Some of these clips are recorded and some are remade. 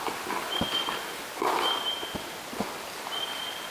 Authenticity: recorded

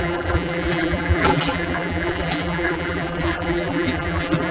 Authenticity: remade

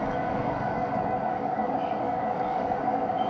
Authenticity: remade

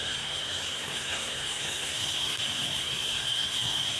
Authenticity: remade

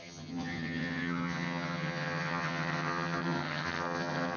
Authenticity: remade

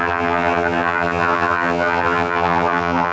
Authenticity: remade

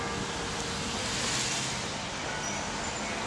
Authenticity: recorded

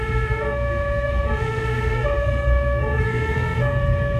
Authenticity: remade